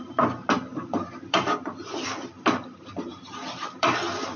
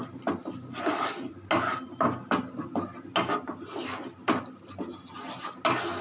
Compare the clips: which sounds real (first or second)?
second